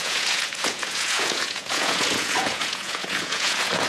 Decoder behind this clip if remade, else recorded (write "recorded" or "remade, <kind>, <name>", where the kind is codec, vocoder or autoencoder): remade, vocoder, Vocos